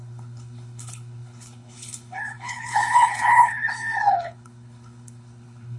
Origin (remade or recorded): remade